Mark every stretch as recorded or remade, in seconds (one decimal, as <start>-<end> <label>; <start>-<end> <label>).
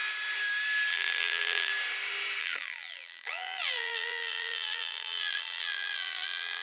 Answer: 0.0-0.9 recorded; 0.9-1.7 remade; 1.7-2.4 recorded; 2.4-6.6 remade